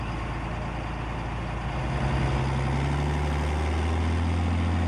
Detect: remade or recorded recorded